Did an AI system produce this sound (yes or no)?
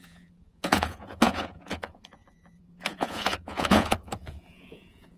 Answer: yes